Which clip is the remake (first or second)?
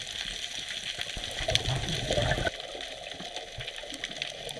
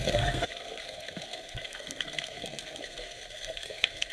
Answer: second